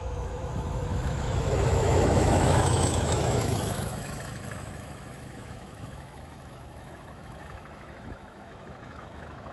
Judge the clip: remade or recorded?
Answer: remade